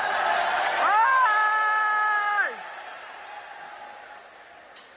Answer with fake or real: real